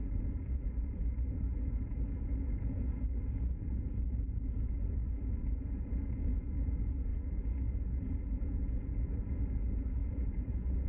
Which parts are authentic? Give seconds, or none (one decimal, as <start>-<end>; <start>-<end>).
none